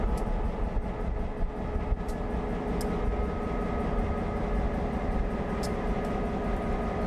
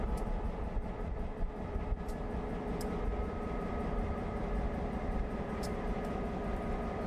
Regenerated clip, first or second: second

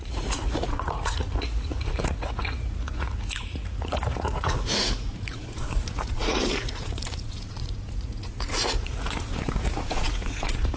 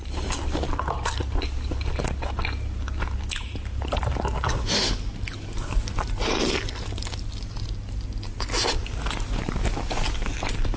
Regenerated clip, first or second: first